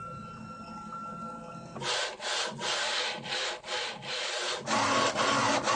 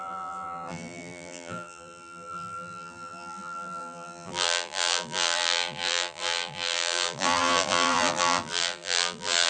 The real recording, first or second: first